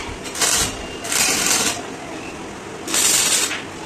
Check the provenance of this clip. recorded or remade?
recorded